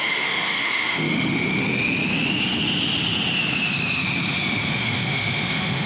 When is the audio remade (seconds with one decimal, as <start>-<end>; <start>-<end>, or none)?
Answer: 0.0-1.6; 4.7-5.9